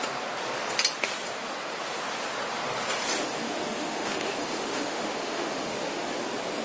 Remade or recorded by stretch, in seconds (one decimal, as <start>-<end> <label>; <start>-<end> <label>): 0.0-3.4 recorded; 3.4-6.1 remade; 6.1-6.6 recorded